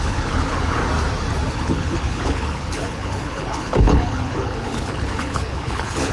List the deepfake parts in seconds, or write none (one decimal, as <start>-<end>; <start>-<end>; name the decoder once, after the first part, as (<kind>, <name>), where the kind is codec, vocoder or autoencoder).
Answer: 0.0-0.8 (codec, HILCodec); 1.5-6.1